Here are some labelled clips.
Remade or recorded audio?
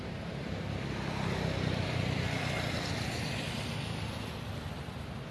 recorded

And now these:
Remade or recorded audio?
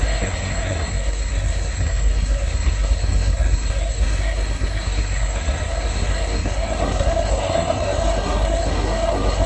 remade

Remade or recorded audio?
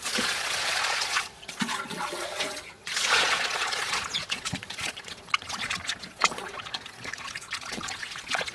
remade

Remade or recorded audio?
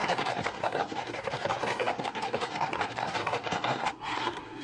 remade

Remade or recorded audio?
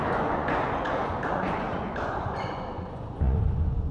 remade